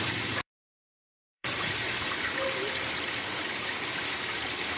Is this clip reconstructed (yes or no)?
yes